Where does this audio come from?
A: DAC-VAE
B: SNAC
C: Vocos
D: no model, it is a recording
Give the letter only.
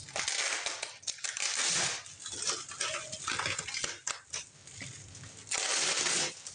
D